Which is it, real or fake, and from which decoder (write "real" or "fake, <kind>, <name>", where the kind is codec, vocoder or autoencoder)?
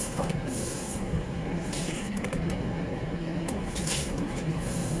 fake, codec, SNAC